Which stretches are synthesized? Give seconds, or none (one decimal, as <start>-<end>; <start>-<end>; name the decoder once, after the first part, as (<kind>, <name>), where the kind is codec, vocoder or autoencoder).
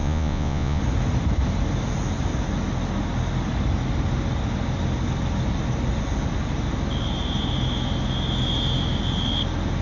0.0-0.8 (vocoder, Vocos)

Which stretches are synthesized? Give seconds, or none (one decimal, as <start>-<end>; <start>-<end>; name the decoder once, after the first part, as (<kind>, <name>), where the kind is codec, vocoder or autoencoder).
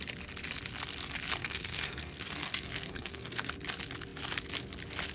1.4-3.5 (codec, SNAC)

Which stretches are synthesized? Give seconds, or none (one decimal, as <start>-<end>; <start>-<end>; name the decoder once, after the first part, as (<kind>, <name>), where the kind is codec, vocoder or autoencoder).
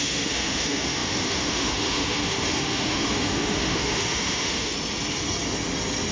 0.0-4.7 (autoencoder, DAC-VAE)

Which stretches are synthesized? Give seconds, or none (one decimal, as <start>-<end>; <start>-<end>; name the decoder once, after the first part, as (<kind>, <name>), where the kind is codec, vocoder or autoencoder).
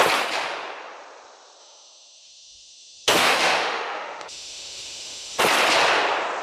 1.6-5.4 (autoencoder, DAC-VAE)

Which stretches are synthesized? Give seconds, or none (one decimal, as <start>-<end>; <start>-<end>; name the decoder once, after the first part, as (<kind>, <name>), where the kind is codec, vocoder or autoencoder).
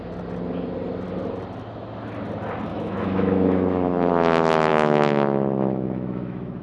2.7-4.1 (autoencoder, DAC-VAE); 4.7-6.6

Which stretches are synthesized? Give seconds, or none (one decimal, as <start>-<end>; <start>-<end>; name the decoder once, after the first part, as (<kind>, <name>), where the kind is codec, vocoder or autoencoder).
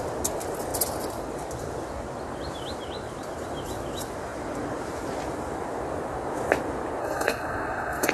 7.0-8.1 (codec, SNAC)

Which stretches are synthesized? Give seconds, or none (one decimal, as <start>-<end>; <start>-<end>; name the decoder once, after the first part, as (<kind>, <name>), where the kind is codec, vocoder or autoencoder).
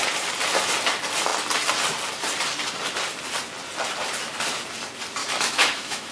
5.2-6.1 (autoencoder, DAC-VAE)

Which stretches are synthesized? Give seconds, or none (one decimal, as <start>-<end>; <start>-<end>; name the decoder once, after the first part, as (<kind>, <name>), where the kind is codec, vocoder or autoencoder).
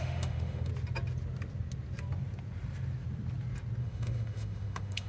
0.0-0.7 (autoencoder, DAC-VAE); 3.8-5.1